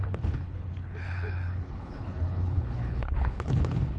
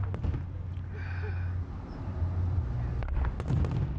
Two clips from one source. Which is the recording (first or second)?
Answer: second